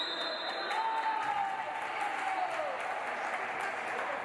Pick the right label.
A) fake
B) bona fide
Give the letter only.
B